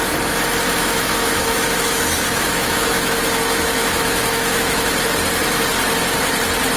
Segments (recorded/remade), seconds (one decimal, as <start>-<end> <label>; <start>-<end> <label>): 0.0-0.8 recorded; 0.8-4.9 remade; 4.9-6.8 recorded